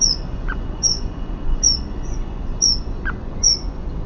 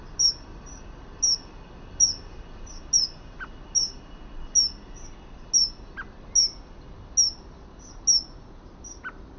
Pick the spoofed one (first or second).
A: first